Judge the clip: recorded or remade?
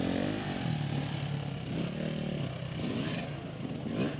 recorded